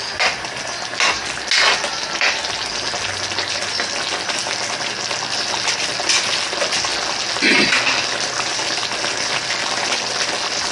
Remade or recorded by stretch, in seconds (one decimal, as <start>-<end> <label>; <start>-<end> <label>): 0.0-10.7 recorded